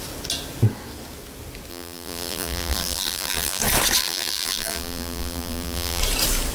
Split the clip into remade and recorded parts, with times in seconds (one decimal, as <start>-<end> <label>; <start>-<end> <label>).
0.0-1.7 recorded; 1.7-3.6 remade; 3.6-4.0 recorded; 4.0-6.0 remade; 6.0-6.5 recorded